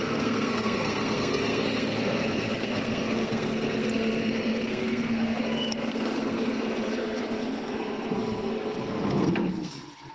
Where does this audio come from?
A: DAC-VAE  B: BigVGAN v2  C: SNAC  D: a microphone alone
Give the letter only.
C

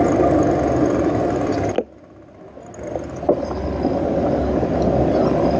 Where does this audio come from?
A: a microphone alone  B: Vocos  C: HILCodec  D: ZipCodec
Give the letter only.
A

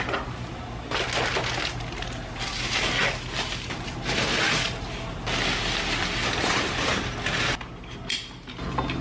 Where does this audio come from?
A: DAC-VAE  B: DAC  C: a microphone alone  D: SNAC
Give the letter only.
C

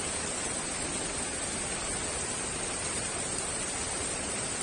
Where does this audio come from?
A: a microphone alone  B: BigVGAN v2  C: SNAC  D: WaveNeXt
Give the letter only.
A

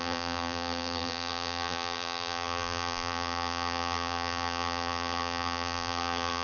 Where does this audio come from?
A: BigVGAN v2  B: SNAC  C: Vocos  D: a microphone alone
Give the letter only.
A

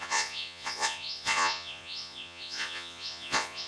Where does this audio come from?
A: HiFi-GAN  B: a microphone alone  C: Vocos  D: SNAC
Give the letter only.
C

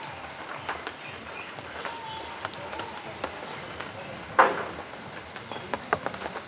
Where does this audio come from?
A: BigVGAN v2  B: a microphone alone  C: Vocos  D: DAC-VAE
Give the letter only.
B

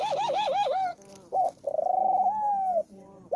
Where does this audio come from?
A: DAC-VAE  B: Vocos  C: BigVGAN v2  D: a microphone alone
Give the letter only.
D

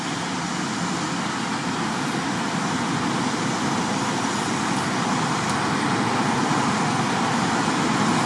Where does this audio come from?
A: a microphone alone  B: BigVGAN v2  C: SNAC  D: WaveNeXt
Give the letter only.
A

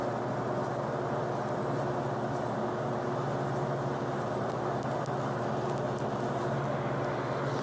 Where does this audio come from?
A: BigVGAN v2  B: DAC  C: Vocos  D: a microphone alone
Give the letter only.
D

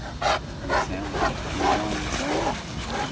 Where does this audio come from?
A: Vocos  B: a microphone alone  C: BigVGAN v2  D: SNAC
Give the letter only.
B